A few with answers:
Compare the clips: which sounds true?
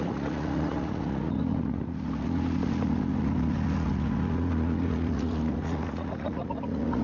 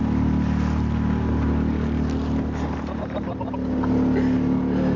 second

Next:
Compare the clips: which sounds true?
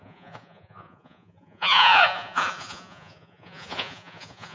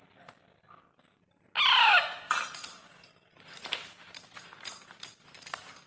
second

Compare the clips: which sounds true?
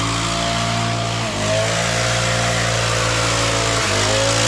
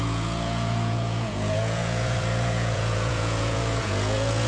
first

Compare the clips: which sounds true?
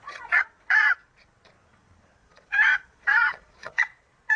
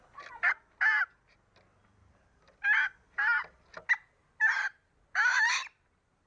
second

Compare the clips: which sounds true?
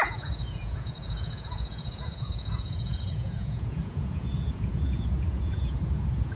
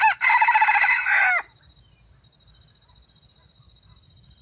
second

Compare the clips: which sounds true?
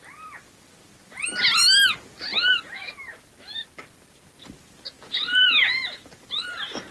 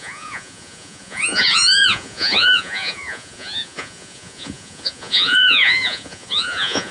first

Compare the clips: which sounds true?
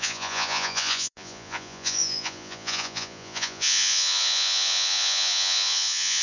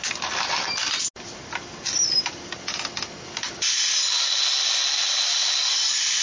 second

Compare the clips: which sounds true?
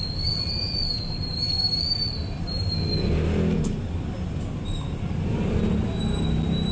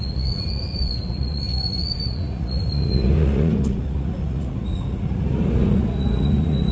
first